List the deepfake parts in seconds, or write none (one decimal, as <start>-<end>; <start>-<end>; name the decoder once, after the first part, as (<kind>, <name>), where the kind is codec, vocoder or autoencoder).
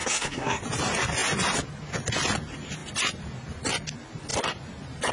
0.0-0.6 (codec, SNAC)